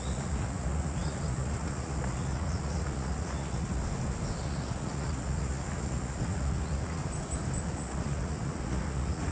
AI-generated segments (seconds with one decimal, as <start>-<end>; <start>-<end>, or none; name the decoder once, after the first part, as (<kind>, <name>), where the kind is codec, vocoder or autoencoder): 0.0-3.8 (vocoder, Vocos); 4.4-7.0; 7.6-9.3